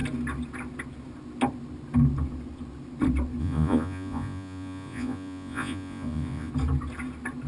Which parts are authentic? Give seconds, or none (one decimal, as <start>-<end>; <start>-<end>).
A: 0.0-3.4; 6.5-7.5